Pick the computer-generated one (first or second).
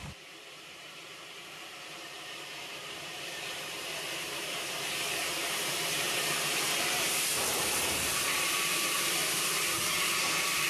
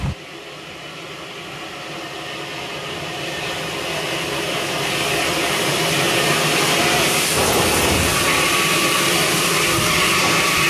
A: first